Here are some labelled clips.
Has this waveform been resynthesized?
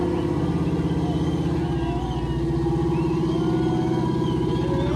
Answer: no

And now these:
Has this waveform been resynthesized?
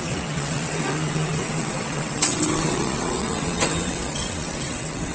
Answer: yes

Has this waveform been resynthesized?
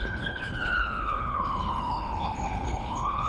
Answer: yes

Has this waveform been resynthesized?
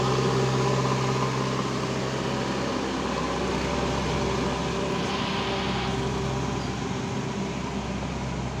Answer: no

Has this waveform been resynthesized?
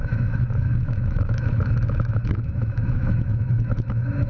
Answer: yes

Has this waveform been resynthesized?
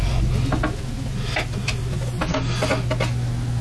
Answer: no